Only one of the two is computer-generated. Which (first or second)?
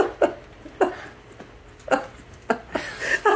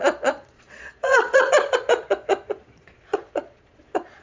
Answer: second